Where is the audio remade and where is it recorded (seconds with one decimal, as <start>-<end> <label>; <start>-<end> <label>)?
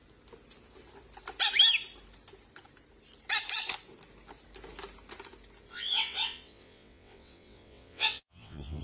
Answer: 0.0-5.7 recorded; 5.7-8.8 remade